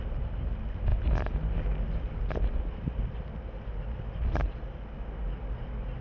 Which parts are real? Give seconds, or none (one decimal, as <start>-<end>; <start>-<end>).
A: 0.0-6.0

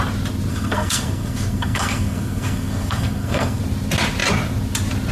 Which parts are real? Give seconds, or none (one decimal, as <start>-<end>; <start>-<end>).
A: 0.0-0.5; 3.6-5.1

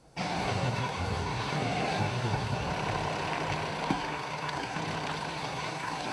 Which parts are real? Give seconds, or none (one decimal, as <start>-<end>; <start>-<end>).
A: 2.7-3.9; 4.8-5.3

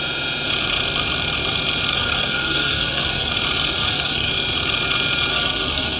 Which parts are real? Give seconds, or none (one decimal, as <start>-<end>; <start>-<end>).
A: 0.0-1.9; 3.3-3.8; 4.3-5.3

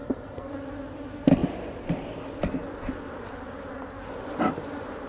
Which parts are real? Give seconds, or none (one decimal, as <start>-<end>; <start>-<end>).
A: 0.5-5.1